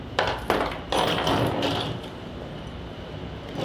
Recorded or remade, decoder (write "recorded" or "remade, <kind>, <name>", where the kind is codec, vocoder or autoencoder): recorded